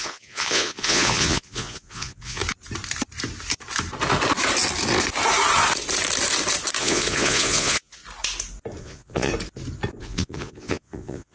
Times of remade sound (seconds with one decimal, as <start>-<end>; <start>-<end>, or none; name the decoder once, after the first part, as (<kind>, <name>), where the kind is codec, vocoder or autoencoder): 0.0-2.4 (vocoder, Vocos); 6.8-8.0; 8.8-9.3; 10.0-11.3